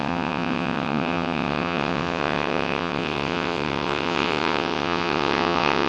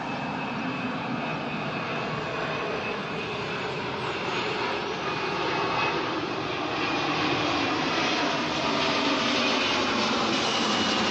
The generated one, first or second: first